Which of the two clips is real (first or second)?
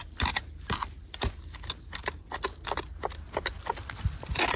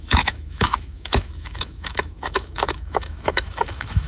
first